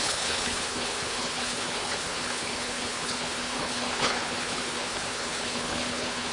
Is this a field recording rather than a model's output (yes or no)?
no